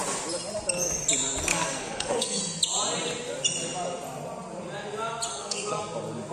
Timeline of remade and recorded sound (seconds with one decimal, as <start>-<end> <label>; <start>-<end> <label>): 0.0-1.5 recorded; 1.5-2.4 remade; 2.4-5.3 recorded; 5.3-5.8 remade; 5.8-6.3 recorded